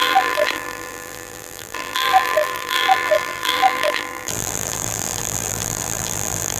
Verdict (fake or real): fake